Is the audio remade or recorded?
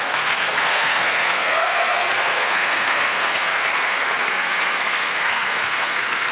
remade